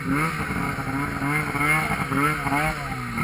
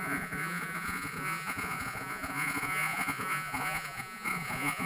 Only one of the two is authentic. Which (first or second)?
first